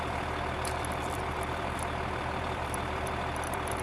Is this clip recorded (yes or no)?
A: no